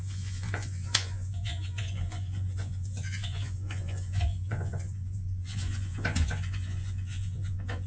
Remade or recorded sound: remade